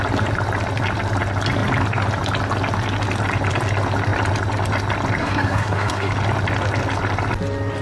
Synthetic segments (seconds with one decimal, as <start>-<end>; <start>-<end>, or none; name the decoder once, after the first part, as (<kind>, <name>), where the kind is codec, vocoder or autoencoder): 5.2-6.1 (codec, SNAC)

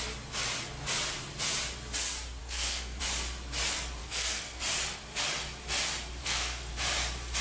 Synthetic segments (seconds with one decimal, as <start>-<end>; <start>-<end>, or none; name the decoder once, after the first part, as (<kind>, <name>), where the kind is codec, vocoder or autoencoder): 2.4-3.0 (codec, SNAC); 4.0-4.6; 6.2-6.7